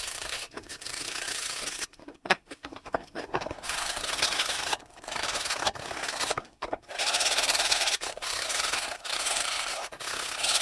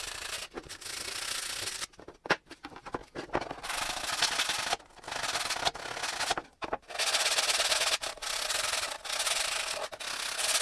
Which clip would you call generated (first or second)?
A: first